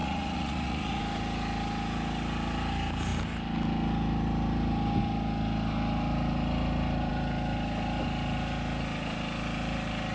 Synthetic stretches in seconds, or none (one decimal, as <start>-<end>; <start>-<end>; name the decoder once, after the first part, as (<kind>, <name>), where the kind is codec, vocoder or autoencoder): 0.0-1.0 (vocoder, Vocos)